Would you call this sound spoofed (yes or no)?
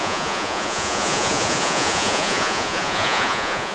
yes